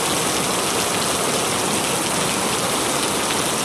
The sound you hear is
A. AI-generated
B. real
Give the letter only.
B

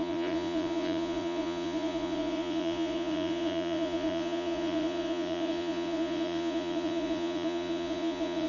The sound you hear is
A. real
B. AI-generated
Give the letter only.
B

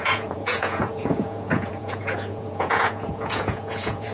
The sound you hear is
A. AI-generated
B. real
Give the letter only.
A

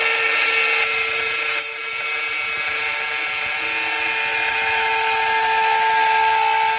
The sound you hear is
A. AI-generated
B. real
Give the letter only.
B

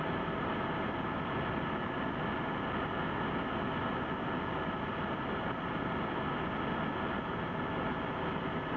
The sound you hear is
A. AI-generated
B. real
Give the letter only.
B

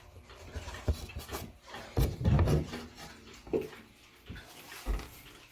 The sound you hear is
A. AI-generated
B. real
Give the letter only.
B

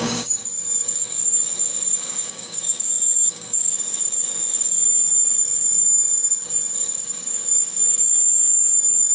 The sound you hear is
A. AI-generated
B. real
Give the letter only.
A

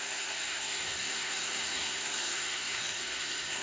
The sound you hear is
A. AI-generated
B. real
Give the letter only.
A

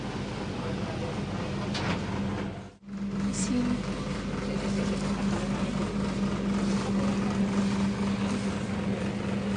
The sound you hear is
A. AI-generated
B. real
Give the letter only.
B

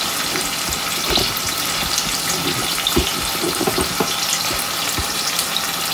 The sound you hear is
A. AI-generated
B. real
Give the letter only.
B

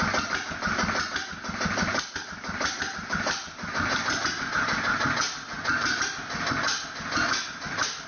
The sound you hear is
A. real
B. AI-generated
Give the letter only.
A